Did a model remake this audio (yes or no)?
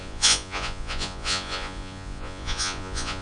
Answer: yes